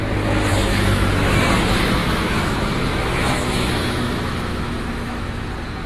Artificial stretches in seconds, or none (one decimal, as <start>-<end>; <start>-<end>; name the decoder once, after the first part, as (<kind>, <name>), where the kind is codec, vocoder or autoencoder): 0.5-1.4 (autoencoder, DAC-VAE); 2.0-5.5